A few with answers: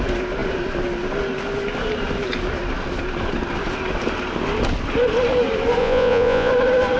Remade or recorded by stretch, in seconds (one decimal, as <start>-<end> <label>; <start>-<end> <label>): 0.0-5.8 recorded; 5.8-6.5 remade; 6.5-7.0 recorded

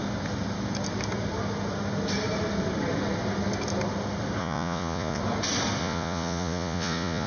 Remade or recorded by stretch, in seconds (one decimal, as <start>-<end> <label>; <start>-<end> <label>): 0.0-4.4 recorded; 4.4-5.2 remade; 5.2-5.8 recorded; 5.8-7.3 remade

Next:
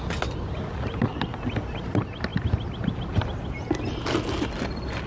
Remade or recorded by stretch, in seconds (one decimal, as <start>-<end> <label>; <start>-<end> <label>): 0.0-5.1 recorded

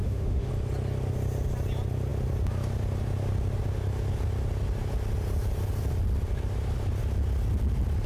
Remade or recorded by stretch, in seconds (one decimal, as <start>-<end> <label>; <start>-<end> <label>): 0.0-0.5 remade; 0.5-8.1 recorded

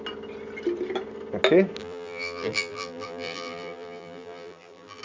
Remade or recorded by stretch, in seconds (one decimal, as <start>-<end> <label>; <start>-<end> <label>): 0.0-1.8 recorded; 1.8-5.0 remade

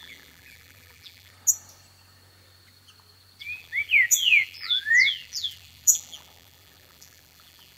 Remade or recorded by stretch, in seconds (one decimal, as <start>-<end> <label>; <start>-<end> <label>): 0.0-1.3 remade; 1.3-3.4 recorded; 3.4-7.8 remade

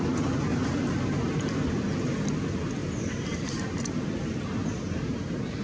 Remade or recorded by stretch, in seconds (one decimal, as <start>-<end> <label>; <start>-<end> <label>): 0.0-0.5 recorded; 0.5-1.7 remade; 1.7-2.8 recorded; 2.8-4.0 remade; 4.0-4.6 recorded; 4.6-5.6 remade

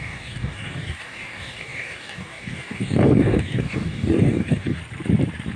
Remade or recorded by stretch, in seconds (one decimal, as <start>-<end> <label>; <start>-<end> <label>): 0.0-4.8 remade; 4.8-5.6 recorded